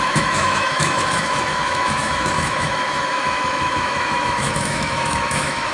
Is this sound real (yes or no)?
no